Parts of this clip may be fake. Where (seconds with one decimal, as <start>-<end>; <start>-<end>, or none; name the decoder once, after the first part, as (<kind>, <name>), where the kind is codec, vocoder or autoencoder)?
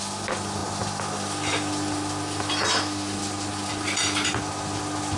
none